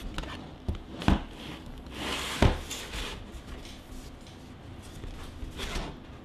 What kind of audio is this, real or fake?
real